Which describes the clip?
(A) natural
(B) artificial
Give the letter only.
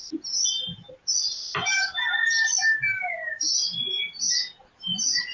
A